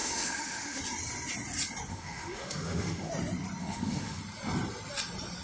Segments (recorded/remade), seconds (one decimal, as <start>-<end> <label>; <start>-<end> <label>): 0.0-0.8 remade; 0.8-1.9 recorded; 1.9-3.1 remade; 3.1-3.6 recorded; 3.6-4.2 remade; 4.2-5.4 recorded